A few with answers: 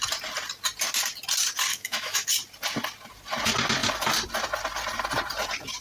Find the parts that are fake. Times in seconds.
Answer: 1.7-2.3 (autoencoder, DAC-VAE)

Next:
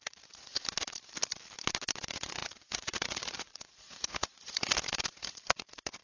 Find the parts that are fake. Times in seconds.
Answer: 0.0-0.5 (vocoder, Vocos); 2.0-4.7; 5.2-6.0

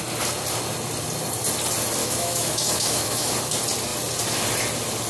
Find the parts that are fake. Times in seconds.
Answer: 2.0-3.3 (autoencoder, DAC-VAE)

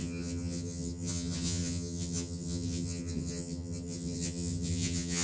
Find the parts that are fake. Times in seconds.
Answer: 0.0-5.2 (vocoder, HiFi-GAN)

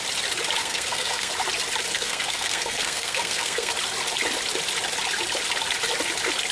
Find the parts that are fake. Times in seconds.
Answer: 0.6-1.3 (codec, SNAC); 1.9-3.7

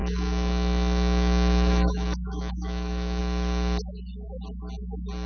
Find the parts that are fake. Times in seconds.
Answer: 0.0-3.2 (autoencoder, DAC-VAE)